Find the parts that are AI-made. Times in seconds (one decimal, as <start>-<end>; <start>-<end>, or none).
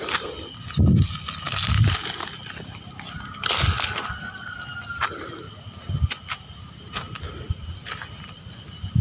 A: none